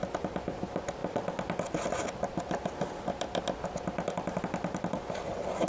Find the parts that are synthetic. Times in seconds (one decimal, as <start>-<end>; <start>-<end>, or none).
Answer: none